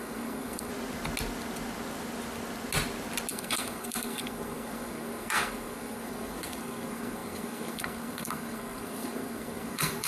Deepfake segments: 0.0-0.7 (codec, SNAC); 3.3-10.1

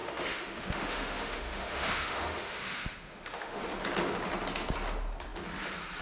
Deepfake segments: 0.0-3.6 (autoencoder, DAC-VAE)

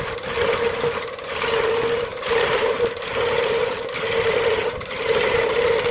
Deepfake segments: 2.1-5.9 (vocoder, BigVGAN v2)